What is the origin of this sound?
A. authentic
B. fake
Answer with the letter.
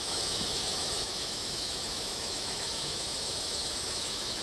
B